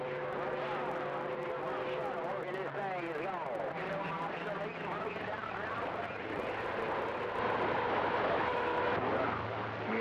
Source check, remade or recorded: recorded